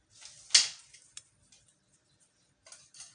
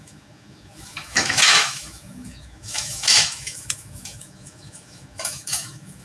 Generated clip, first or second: second